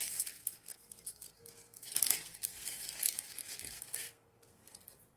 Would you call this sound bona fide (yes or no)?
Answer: no